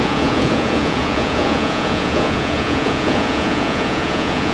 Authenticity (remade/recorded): remade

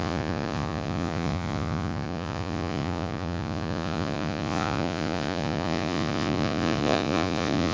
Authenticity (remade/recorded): remade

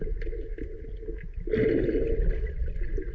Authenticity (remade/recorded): recorded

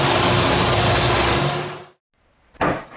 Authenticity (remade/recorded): recorded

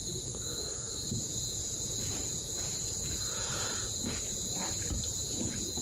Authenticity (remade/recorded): remade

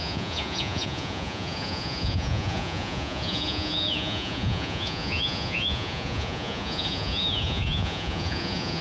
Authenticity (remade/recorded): remade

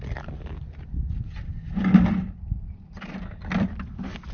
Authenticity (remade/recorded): recorded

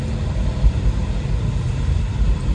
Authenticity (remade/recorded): recorded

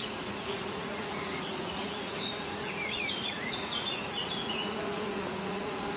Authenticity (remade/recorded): remade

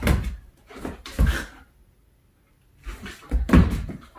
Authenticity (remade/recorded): recorded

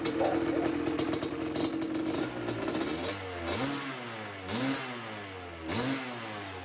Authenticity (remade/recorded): recorded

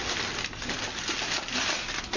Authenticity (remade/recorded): recorded